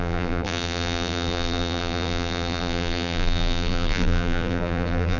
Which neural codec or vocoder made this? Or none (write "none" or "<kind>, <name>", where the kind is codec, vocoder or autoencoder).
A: vocoder, BigVGAN v2